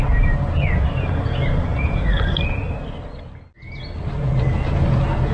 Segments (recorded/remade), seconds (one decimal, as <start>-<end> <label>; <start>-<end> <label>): 0.0-5.3 recorded

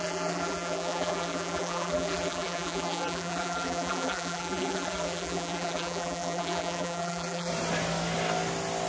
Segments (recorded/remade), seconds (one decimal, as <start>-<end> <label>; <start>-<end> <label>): 0.0-7.5 remade; 7.5-8.9 recorded

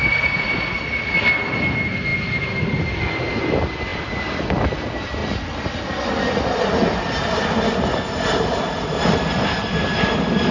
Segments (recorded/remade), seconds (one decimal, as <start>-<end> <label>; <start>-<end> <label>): 0.0-10.5 recorded

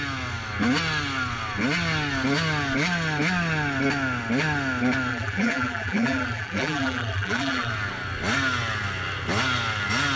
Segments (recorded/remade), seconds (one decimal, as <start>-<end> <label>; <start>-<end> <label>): 0.0-5.1 recorded; 5.1-7.7 remade; 7.7-10.2 recorded

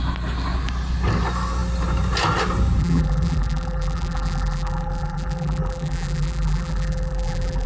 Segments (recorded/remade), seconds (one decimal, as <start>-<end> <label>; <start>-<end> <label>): 0.0-2.8 recorded; 2.8-7.7 remade

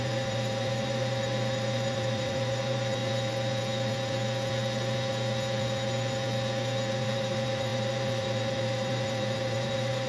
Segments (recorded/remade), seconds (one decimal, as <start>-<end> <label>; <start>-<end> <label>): 0.0-3.0 remade; 3.0-7.0 recorded; 7.0-10.1 remade

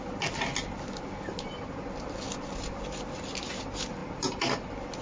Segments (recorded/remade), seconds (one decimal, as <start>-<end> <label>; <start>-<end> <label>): 0.0-4.0 recorded; 4.0-4.6 remade; 4.6-5.0 recorded

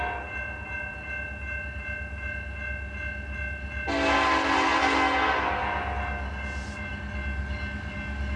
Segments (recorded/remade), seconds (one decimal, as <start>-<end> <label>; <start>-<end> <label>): 0.0-8.4 recorded